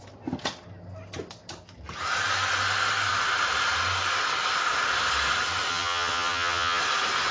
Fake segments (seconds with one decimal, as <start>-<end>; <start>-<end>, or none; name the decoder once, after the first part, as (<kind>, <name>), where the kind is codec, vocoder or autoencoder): 5.7-6.8 (vocoder, HiFi-GAN)